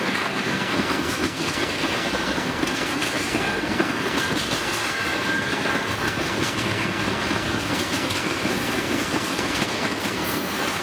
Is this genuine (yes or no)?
no